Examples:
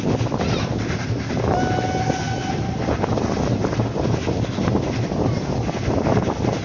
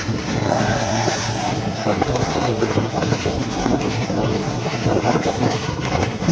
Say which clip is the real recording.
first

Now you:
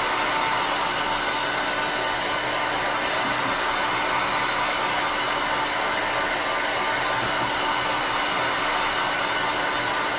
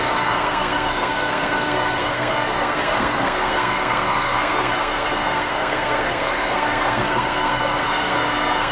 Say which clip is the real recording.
first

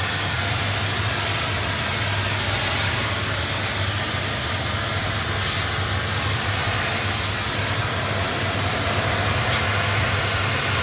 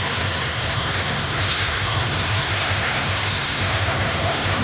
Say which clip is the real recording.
first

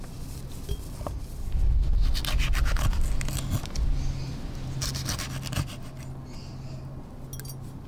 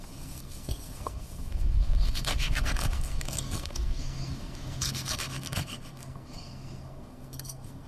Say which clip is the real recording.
first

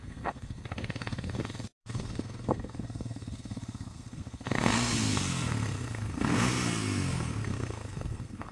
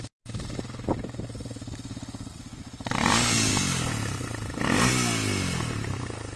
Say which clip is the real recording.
second